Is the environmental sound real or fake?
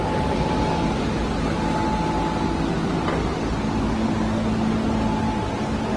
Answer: real